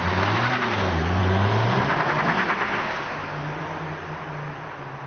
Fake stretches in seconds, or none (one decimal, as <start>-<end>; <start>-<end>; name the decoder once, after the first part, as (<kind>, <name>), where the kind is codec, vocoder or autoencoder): none